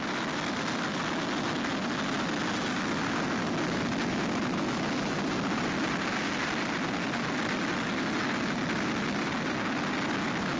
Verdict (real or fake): real